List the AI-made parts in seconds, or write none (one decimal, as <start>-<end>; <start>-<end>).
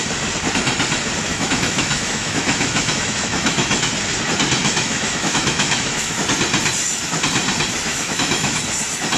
1.3-3.9; 4.6-6.2; 7.9-8.6